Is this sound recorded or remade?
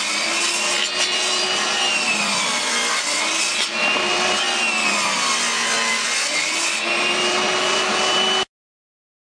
recorded